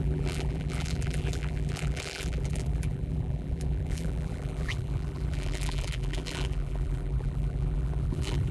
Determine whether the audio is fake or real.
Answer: fake